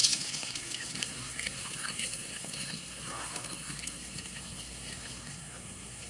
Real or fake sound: fake